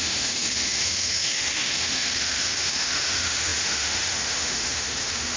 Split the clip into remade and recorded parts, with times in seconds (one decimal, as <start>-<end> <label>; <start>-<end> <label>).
0.0-5.4 remade